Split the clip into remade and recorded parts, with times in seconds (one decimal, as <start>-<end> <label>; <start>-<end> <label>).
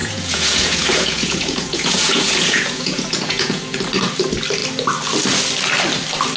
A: 0.0-3.8 remade; 3.8-6.4 recorded